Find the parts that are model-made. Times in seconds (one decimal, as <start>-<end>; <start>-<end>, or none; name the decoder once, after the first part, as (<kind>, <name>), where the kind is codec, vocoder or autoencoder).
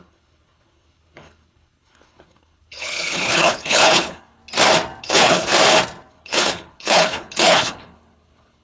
0.0-4.4 (codec, HILCodec); 5.0-5.5; 6.1-8.6